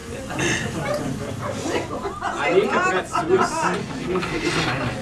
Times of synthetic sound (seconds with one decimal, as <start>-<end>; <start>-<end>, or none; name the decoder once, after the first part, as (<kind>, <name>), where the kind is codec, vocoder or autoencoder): 3.8-4.5 (codec, SNAC)